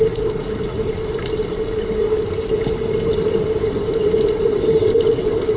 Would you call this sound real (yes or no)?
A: yes